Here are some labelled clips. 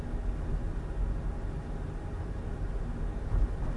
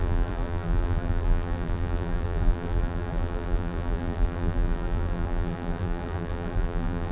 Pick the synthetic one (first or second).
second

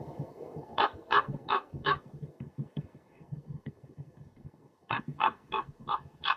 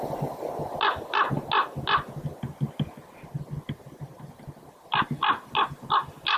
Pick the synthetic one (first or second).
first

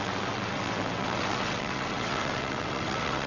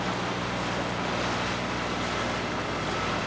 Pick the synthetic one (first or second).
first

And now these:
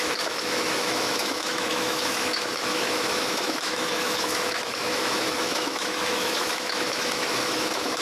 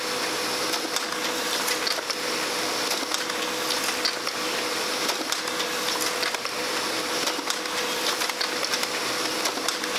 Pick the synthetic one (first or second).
first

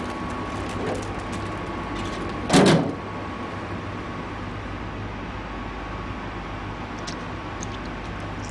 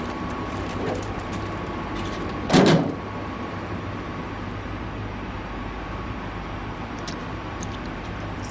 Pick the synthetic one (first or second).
second